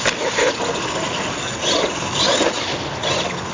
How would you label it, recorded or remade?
recorded